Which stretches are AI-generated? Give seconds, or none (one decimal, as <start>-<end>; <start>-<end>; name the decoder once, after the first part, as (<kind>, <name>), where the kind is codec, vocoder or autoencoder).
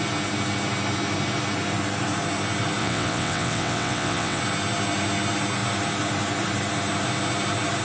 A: 2.8-4.4 (vocoder, WaveNeXt)